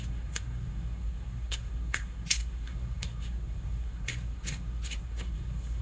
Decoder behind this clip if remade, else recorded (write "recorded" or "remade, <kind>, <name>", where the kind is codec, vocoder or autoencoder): remade, codec, SNAC